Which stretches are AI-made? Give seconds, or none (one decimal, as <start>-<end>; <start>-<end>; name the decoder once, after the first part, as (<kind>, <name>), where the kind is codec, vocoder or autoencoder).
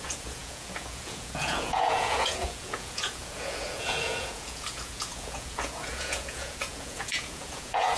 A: 0.0-8.0 (vocoder, Vocos)